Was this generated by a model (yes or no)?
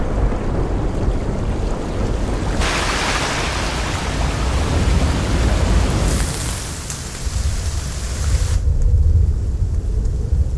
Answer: no